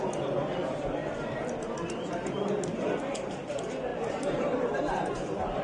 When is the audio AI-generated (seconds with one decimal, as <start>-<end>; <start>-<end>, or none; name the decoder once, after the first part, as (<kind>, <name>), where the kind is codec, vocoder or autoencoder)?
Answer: 3.9-5.6 (vocoder, BigVGAN v2)